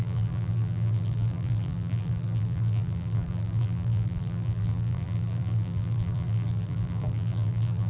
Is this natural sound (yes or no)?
no